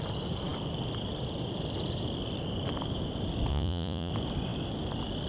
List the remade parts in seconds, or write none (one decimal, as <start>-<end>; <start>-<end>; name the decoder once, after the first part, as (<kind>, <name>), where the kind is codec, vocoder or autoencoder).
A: 3.5-4.1 (vocoder, Vocos)